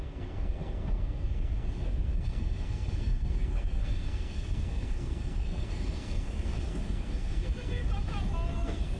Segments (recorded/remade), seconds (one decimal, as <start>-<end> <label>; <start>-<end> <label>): 0.0-7.8 remade; 7.8-8.5 recorded; 8.5-9.0 remade